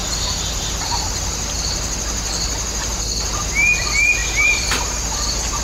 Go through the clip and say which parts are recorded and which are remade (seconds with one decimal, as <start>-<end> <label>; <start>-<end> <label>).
0.0-4.2 recorded; 4.2-4.8 remade; 4.8-5.6 recorded